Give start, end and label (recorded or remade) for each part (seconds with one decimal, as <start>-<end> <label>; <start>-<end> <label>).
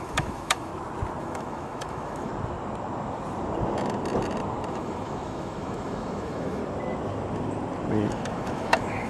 0.0-0.7 remade; 0.7-1.2 recorded; 1.2-2.3 remade; 2.3-4.7 recorded; 4.7-6.6 remade; 6.6-8.1 recorded; 8.1-9.1 remade